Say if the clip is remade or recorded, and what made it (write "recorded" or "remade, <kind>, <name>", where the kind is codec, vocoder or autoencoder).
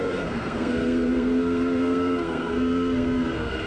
remade, codec, SNAC